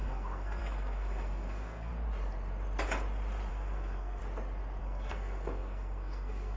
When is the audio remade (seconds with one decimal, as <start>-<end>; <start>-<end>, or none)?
0.0-1.9; 3.5-4.2; 4.8-6.6